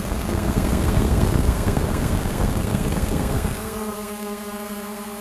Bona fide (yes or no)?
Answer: no